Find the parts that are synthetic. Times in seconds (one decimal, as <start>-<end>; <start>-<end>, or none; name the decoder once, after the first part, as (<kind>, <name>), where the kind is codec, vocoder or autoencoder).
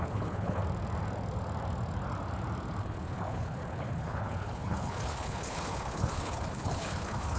0.0-0.6 (codec, HILCodec); 2.8-7.4